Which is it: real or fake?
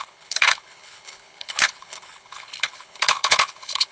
fake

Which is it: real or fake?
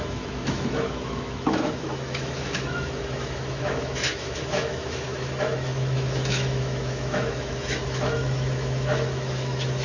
fake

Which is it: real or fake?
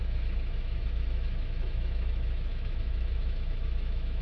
fake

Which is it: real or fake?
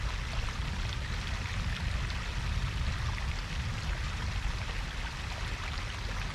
real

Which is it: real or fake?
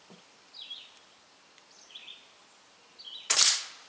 real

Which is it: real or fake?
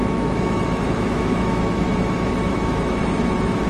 fake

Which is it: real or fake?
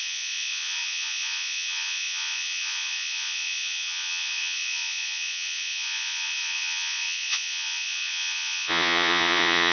fake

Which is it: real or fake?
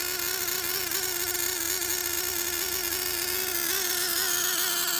real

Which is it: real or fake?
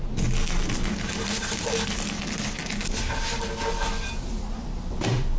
real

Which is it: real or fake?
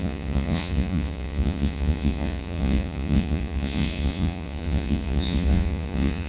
fake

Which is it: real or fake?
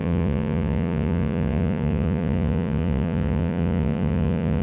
fake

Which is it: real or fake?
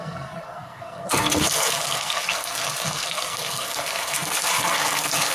fake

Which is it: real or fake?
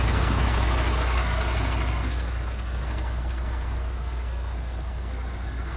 fake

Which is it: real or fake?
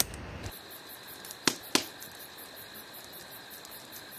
real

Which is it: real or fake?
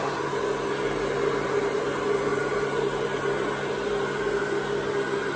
real